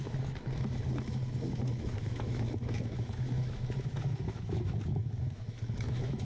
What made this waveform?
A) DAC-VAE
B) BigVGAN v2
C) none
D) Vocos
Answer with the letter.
A